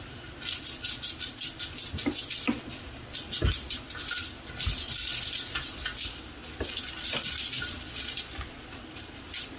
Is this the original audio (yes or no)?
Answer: yes